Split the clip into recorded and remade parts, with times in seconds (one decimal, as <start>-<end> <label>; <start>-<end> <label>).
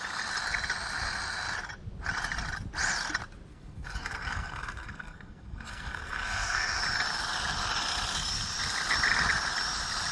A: 0.0-3.5 recorded; 3.5-6.8 remade; 6.8-10.1 recorded